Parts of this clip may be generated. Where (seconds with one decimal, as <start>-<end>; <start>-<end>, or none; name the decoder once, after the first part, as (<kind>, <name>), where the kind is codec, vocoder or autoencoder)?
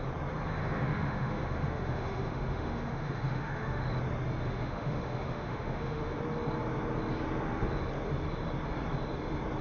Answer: 0.6-3.8 (autoencoder, DAC-VAE); 4.4-6.2